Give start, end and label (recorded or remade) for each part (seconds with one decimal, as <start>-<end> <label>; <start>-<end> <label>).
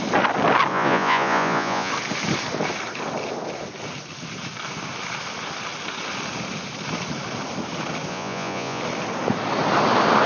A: 0.0-0.7 recorded; 0.7-1.9 remade; 1.9-8.1 recorded; 8.1-8.8 remade; 8.8-10.3 recorded